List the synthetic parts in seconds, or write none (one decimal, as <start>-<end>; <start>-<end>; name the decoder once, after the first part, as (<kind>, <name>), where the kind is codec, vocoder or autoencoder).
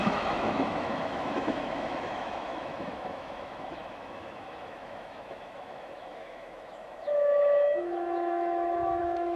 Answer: 0.0-9.4 (autoencoder, DAC-VAE)